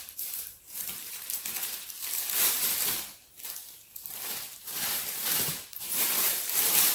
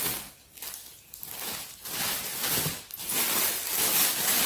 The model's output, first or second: first